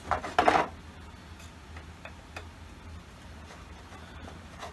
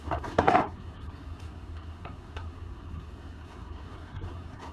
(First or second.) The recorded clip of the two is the first